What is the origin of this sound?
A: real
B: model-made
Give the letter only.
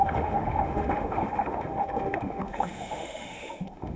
B